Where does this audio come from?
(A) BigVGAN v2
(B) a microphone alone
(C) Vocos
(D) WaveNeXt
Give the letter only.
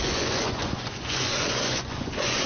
C